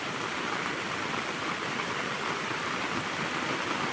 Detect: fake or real fake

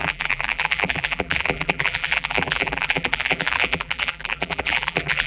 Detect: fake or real fake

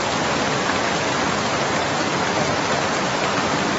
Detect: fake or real real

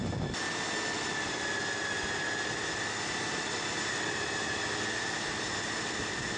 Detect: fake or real real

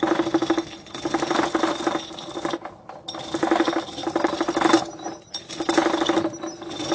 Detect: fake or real real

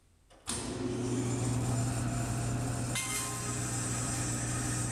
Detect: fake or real real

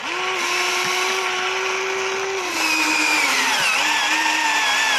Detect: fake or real fake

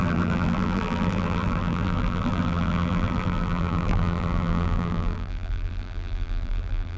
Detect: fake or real fake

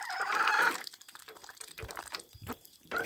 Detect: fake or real fake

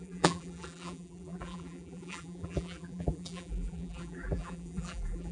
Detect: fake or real fake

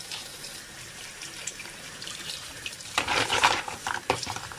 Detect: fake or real fake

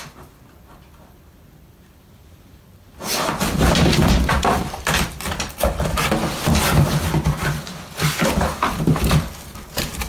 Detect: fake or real fake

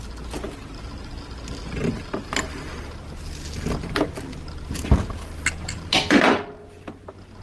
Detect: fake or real real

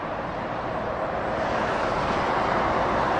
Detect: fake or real fake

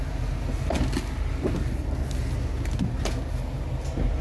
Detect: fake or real real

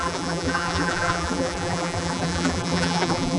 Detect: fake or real fake